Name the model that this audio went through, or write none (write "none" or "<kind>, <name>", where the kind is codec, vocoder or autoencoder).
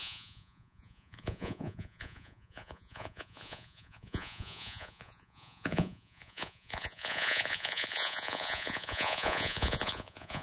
vocoder, Vocos